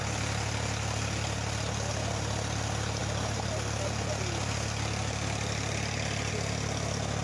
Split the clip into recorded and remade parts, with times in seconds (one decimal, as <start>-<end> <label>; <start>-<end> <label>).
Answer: 0.0-7.2 recorded